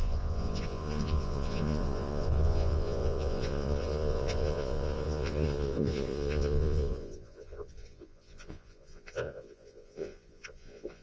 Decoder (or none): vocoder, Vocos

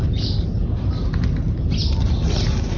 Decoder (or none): none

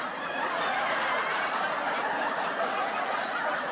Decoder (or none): vocoder, Vocos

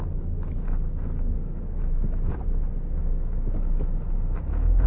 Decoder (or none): none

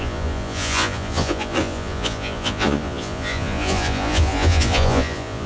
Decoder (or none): vocoder, Vocos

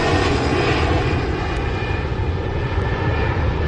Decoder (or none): vocoder, Vocos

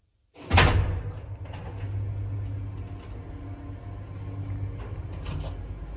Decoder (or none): none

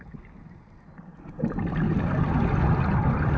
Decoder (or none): none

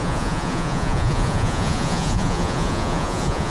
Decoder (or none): vocoder, Vocos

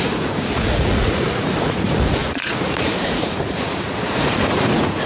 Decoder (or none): vocoder, Vocos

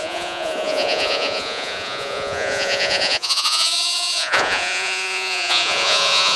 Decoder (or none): vocoder, Vocos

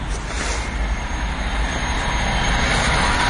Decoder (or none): none